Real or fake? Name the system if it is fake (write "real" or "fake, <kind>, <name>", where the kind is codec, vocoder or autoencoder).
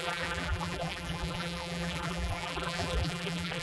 fake, vocoder, BigVGAN v2